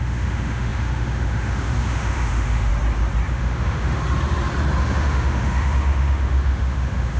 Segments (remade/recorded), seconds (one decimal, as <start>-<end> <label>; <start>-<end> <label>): 0.0-2.7 remade; 2.7-3.3 recorded; 3.3-4.0 remade; 4.0-4.8 recorded; 4.8-7.2 remade